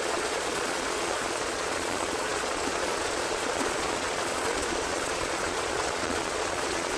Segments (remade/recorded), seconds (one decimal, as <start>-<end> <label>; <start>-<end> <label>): 0.0-7.0 remade